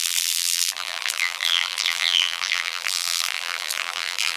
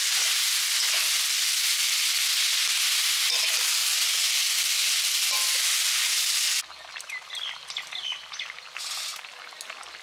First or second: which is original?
second